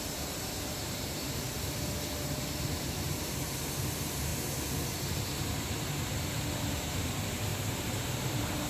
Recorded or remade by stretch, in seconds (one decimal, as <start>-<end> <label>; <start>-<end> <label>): 0.0-8.7 remade